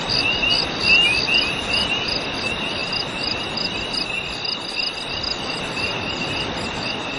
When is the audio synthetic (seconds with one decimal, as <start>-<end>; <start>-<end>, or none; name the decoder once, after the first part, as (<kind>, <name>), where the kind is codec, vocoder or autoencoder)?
none